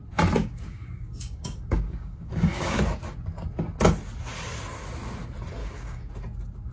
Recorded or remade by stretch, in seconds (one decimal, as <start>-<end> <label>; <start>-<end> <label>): 0.0-0.4 recorded; 0.4-2.8 remade; 2.8-5.6 recorded; 5.6-6.1 remade; 6.1-6.7 recorded